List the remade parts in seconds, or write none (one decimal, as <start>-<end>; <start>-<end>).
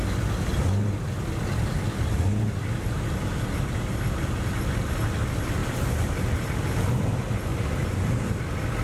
5.6-6.6; 7.5-8.4